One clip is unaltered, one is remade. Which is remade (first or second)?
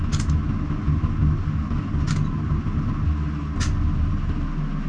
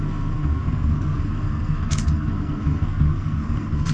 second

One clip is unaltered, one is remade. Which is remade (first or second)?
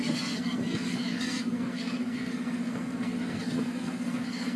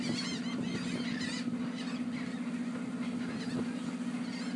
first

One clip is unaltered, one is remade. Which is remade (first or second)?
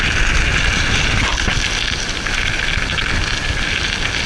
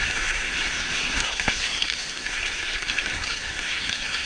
second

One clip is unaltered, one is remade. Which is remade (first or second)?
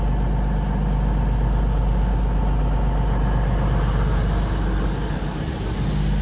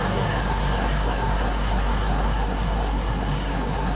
second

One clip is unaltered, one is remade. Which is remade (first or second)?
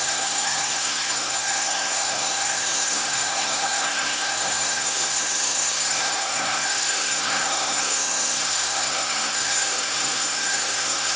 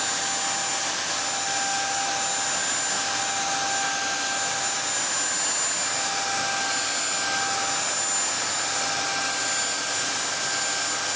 first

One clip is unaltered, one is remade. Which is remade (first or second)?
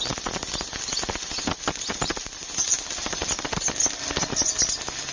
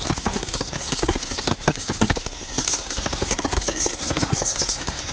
second